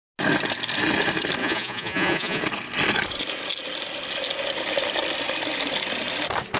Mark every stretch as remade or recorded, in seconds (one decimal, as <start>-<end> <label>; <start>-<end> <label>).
0.0-1.4 recorded; 1.4-2.4 remade; 2.4-6.6 recorded